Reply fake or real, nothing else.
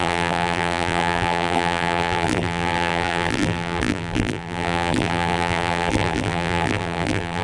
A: fake